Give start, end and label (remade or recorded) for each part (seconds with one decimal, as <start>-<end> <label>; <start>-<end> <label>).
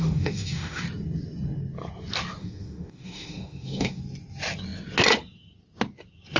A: 0.0-0.8 remade; 0.8-2.4 recorded; 2.4-4.0 remade; 4.0-6.4 recorded